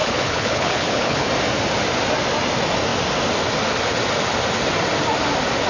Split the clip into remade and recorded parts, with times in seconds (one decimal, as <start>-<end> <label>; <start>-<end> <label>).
0.0-1.3 remade; 1.3-5.7 recorded